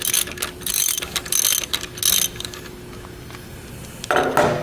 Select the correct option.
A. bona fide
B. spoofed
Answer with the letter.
A